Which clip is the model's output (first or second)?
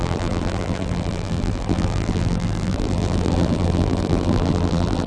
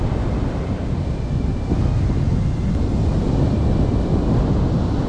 first